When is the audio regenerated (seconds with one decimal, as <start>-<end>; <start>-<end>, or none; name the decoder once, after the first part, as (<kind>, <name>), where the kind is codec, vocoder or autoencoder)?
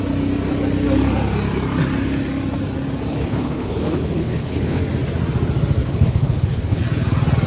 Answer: 3.1-4.8 (codec, HILCodec); 5.8-6.8